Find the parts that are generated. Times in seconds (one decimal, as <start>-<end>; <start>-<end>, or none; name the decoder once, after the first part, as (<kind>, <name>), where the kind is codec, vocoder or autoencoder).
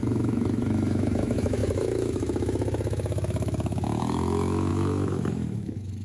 0.0-6.0 (autoencoder, DAC-VAE)